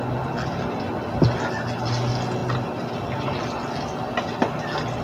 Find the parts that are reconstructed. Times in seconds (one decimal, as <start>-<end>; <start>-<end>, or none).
none